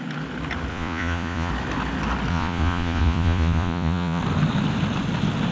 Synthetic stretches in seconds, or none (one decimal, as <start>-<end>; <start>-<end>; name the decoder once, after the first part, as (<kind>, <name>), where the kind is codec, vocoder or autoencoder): 0.7-1.5 (vocoder, Vocos); 2.3-4.2